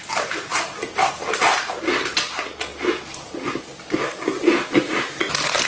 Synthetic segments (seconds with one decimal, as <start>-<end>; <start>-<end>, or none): 0.5-1.4

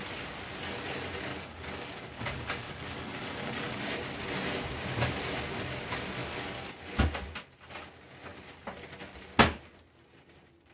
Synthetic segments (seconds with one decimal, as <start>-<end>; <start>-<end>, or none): 1.3-3.8; 6.2-6.8

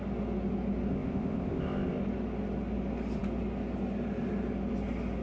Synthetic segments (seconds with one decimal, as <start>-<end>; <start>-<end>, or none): 0.9-2.0

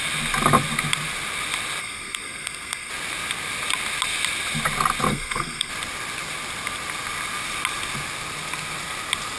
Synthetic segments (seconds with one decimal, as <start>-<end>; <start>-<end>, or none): 1.8-2.9; 5.1-5.7

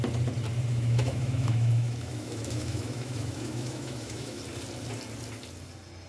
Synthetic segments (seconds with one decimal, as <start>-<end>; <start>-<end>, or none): 0.7-4.4

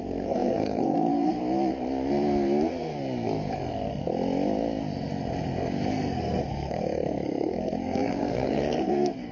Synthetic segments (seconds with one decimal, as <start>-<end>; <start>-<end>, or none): 0.0-1.4; 5.9-9.3

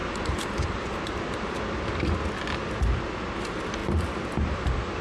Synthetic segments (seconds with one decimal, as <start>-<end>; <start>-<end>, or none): 0.0-1.5; 3.8-5.0

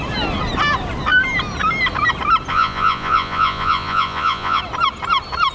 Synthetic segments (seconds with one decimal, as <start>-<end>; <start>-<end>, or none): 2.5-4.6